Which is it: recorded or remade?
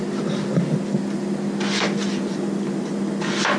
recorded